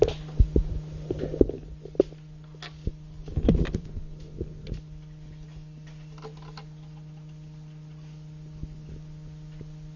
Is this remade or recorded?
recorded